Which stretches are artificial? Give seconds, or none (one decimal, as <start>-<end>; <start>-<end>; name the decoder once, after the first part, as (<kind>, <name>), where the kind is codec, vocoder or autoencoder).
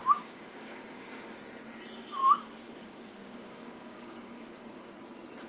0.0-1.4 (codec, DAC); 2.2-4.9